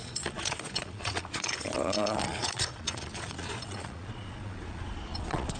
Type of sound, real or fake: fake